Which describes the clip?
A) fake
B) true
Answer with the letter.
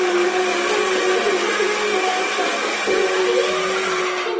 B